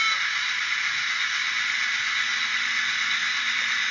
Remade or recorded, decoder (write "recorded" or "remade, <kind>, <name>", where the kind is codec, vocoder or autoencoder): recorded